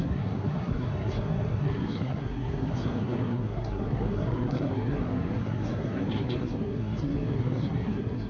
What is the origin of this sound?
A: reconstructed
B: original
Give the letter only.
A